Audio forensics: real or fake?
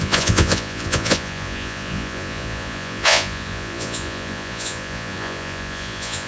fake